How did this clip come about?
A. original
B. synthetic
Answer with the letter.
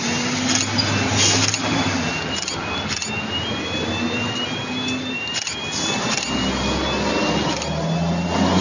A